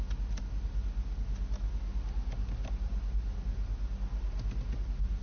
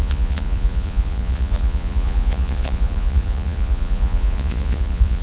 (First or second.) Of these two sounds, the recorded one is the first